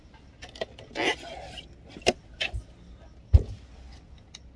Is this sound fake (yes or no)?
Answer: no